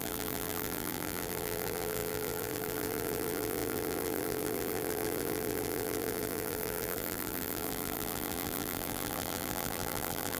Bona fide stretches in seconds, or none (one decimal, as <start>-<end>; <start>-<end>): none